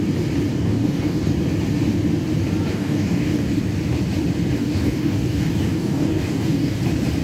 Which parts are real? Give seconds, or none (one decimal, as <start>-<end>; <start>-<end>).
0.0-0.5; 1.3-2.7; 3.6-4.6; 6.8-7.2